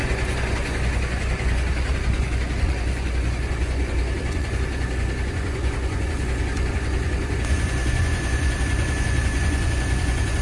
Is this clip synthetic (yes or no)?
yes